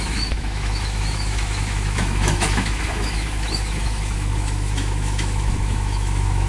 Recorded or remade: remade